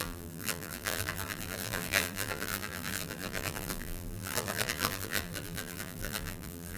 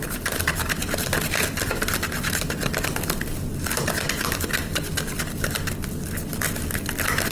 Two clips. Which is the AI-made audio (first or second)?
first